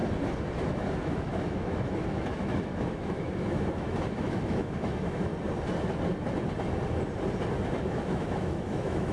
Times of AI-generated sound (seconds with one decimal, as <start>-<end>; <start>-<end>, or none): 0.6-5.3; 7.8-9.1